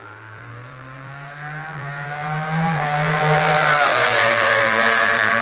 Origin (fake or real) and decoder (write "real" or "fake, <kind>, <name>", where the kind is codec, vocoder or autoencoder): fake, vocoder, BigVGAN v2